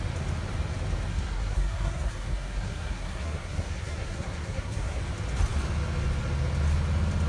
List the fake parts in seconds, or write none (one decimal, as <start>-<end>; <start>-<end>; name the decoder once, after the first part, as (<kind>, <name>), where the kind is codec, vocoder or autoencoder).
1.1-5.0 (codec, SNAC)

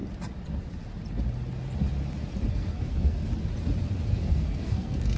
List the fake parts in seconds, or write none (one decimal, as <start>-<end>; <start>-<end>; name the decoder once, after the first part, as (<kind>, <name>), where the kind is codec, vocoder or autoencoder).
2.5-3.3 (codec, SNAC); 4.1-5.2

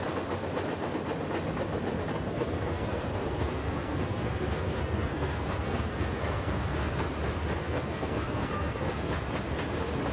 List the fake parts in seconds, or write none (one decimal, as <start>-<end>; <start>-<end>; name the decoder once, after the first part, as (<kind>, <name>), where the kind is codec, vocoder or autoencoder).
2.1-7.1 (codec, SNAC); 7.6-9.2

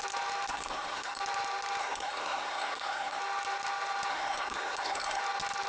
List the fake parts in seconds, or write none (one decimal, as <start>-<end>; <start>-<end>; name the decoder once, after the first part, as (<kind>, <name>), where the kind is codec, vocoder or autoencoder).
0.5-1.2 (codec, SNAC); 1.8-3.2; 4.1-5.2

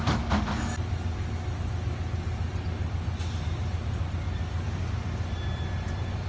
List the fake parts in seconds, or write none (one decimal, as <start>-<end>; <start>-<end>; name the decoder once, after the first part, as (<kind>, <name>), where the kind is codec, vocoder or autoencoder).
none

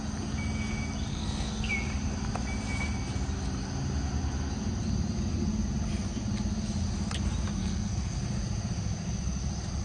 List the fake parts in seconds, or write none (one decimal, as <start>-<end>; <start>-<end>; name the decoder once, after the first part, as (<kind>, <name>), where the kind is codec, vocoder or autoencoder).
1.1-1.7 (codec, SNAC); 7.6-8.2